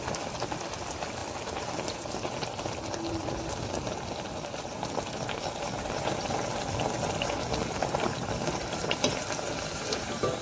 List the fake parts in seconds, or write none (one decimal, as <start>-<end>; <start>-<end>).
none